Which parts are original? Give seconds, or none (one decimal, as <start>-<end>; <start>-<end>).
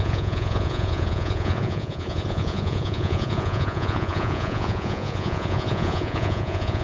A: none